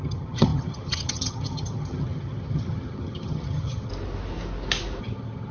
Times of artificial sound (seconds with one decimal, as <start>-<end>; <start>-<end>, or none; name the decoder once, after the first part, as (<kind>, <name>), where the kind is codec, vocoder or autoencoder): 0.0-3.9 (vocoder, HiFi-GAN); 5.0-5.5